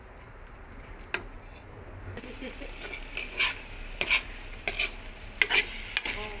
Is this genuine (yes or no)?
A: yes